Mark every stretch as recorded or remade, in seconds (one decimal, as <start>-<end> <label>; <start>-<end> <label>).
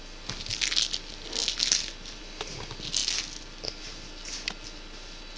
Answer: 0.0-5.4 recorded